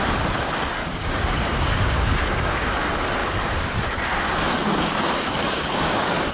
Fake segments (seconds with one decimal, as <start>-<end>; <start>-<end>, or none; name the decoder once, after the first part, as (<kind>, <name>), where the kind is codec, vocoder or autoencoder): 0.8-2.7 (codec, DAC); 5.4-6.3